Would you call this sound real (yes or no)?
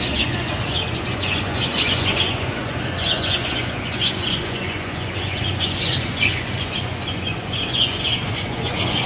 no